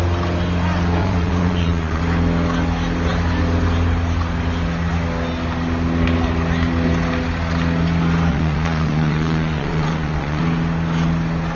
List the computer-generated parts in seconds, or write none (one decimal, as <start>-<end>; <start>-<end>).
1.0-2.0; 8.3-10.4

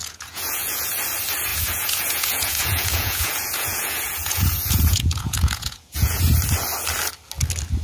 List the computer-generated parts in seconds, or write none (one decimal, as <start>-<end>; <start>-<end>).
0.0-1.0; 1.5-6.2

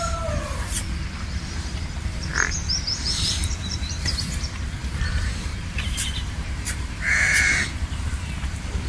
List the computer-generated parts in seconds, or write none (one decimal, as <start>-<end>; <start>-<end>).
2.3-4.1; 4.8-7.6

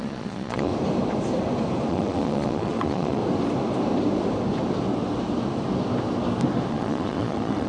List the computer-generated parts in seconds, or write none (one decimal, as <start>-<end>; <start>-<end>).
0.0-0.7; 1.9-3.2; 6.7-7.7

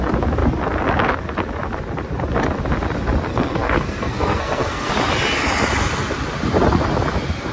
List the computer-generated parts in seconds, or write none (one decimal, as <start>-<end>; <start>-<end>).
3.3-4.9

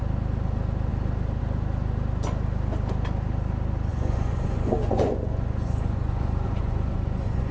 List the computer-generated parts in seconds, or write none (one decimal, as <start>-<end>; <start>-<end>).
3.9-7.5

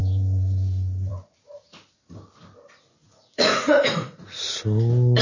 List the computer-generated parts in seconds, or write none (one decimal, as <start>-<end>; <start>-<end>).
3.0-4.6

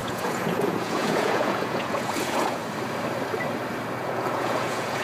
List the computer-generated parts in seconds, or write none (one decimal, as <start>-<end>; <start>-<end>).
0.0-2.6; 4.0-5.0